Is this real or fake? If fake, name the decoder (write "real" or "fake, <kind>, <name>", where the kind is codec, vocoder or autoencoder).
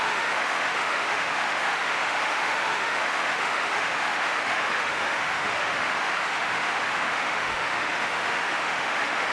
fake, autoencoder, DAC-VAE